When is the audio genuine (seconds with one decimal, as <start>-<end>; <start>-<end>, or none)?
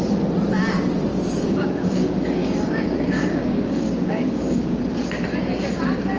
0.0-1.1; 4.8-6.2